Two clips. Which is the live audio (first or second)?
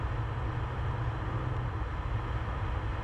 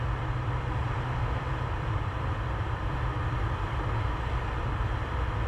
first